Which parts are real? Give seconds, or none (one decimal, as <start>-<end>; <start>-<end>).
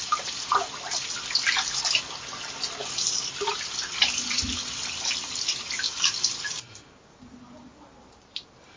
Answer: 0.0-8.8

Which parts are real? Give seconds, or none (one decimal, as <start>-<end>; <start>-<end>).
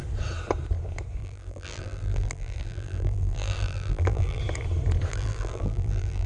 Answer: 0.0-1.2; 4.4-5.1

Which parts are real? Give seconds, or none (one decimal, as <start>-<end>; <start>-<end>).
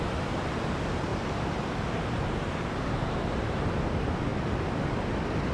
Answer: 0.0-1.1; 3.8-5.5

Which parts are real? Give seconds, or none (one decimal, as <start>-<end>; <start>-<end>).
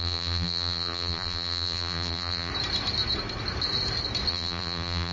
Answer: 2.5-4.3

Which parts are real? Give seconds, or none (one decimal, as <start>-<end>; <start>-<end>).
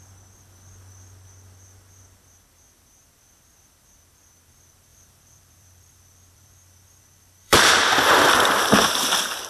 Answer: 0.0-4.9; 8.6-9.5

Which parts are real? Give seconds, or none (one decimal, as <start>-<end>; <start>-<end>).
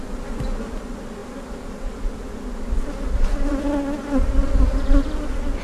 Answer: 0.0-1.2; 2.4-5.6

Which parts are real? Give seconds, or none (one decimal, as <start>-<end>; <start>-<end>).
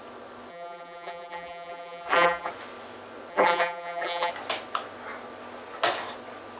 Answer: 0.0-0.5; 2.5-3.3; 4.3-6.6